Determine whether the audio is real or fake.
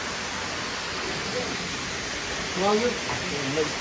real